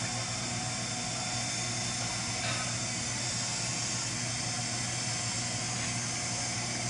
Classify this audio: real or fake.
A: real